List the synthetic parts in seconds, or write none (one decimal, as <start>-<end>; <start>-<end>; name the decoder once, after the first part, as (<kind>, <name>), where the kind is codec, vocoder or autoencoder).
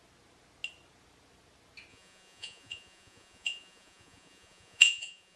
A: 1.9-5.4 (vocoder, Vocos)